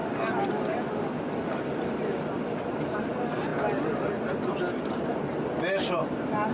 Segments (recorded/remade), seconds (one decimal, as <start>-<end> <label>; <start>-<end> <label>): 0.0-6.5 recorded